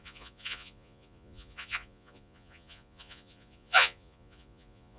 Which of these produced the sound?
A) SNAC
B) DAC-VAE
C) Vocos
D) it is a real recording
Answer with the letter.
C